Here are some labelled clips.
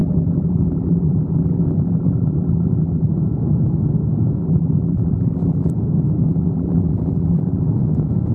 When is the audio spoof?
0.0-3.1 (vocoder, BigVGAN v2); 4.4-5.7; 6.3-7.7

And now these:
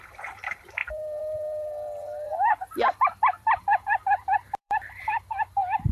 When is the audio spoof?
0.8-2.3 (vocoder, BigVGAN v2); 3.3-5.9

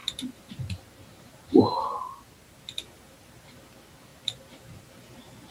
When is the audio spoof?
0.0-1.9 (vocoder, BigVGAN v2); 4.1-4.8